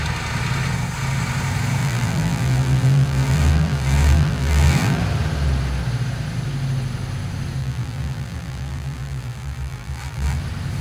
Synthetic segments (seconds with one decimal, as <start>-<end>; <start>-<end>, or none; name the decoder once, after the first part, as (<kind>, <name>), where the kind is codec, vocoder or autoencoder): 1.8-5.0 (vocoder, BigVGAN v2); 7.6-10.4